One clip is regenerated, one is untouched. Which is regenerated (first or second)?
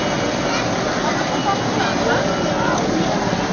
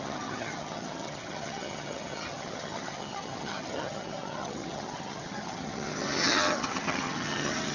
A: second